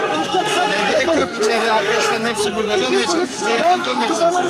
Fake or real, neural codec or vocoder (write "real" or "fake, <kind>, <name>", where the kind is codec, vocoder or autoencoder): fake, codec, SNAC